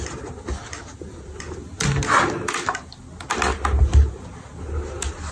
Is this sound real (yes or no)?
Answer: yes